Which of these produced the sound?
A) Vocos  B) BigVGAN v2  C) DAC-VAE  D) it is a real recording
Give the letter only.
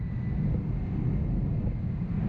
D